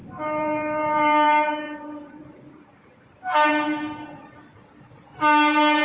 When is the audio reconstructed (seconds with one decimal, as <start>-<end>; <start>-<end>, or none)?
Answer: 0.0-3.5